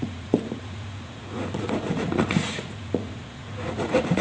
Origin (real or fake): fake